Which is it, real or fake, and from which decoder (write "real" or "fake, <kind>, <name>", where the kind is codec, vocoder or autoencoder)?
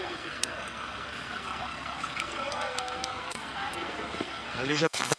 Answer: fake, codec, SNAC